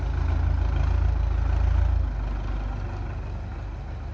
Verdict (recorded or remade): recorded